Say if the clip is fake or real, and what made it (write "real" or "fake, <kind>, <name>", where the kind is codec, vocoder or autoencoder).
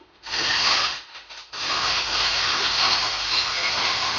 fake, autoencoder, DAC-VAE